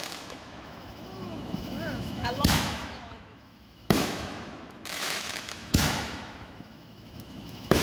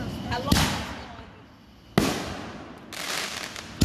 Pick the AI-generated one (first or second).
first